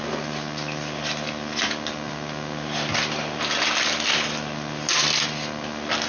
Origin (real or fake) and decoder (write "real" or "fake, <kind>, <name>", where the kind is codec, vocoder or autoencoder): real